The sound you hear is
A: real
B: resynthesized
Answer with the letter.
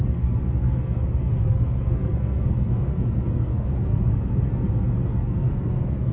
B